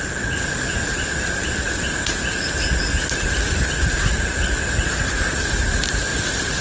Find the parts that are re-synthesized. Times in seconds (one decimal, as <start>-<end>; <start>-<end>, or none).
6.1-6.6